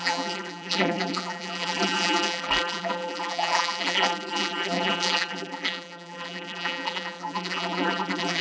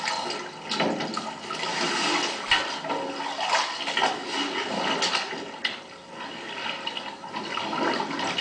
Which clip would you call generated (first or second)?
first